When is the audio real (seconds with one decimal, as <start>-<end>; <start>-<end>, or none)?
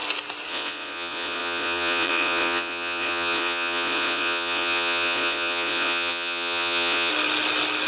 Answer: 0.0-0.5; 7.1-7.9